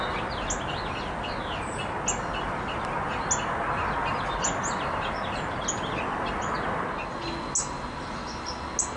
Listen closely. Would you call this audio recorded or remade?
recorded